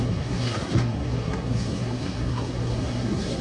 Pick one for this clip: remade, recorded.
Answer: remade